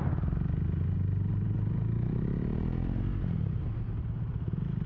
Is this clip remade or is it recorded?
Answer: recorded